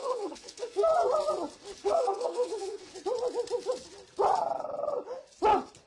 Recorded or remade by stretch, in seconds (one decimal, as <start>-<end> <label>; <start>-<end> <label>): 0.0-0.9 remade; 0.9-1.8 recorded; 1.8-2.9 remade; 2.9-5.9 recorded